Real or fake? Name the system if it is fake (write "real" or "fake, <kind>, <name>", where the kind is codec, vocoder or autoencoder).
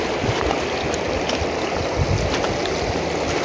real